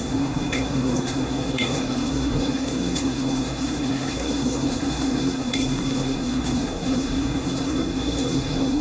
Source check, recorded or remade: remade